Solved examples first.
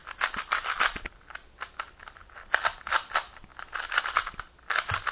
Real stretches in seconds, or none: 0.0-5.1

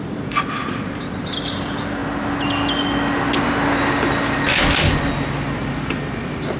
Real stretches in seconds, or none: 2.0-5.6

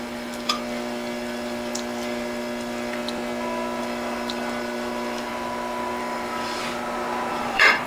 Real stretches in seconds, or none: 3.0-3.8; 5.3-6.0; 6.6-7.3

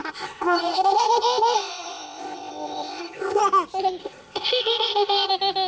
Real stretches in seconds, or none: 3.4-4.0; 5.3-5.7

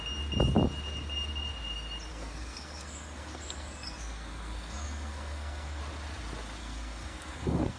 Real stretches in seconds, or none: 0.0-2.1; 5.8-6.6

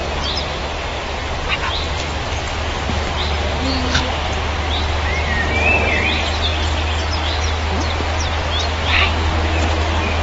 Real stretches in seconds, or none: 0.0-10.2

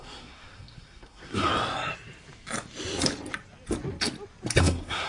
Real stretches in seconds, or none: 1.5-4.6